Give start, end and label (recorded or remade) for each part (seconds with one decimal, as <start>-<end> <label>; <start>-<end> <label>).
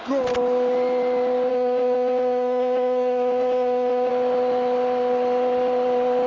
0.0-1.5 recorded; 1.5-4.1 remade; 4.1-6.3 recorded